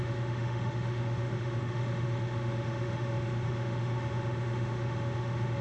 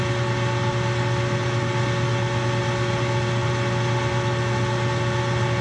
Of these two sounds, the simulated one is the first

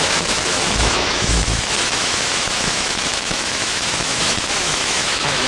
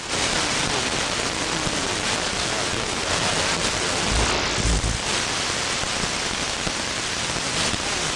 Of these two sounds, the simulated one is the first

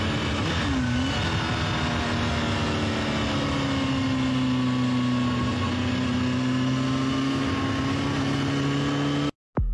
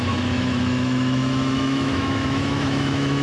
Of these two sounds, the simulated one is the second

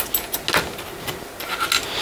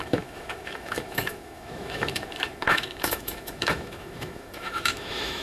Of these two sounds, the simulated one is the second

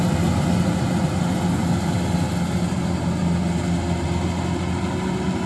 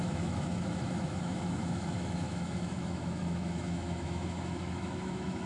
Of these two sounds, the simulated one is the second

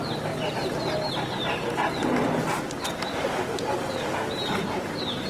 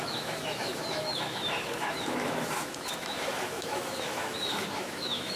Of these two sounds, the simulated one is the second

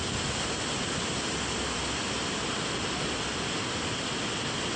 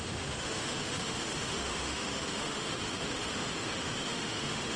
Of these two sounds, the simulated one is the second